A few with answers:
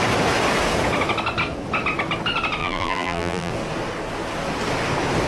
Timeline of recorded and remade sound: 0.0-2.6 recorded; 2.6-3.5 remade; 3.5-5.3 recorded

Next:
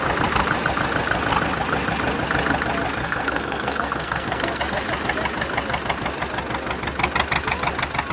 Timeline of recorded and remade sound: 0.0-3.0 recorded; 3.0-4.6 remade; 4.6-8.1 recorded

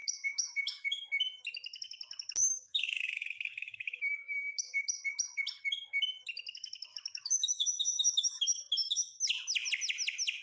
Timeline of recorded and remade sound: 0.0-1.1 remade; 1.1-2.4 recorded; 2.4-4.8 remade; 4.8-6.9 recorded; 6.9-9.2 remade; 9.2-10.4 recorded

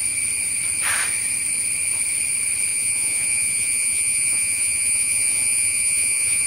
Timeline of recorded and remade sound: 0.0-2.7 recorded; 2.7-6.5 remade